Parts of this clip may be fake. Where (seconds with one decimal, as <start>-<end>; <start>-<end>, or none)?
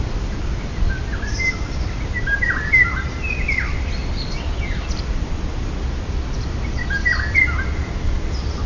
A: 0.0-4.0; 6.6-8.7